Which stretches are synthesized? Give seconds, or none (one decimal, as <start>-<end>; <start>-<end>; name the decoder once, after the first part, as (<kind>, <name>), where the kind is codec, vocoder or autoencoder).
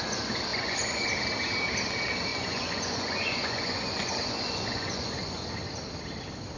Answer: 0.5-1.1 (vocoder, Vocos); 2.3-5.5